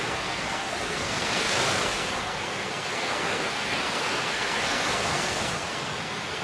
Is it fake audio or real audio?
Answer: fake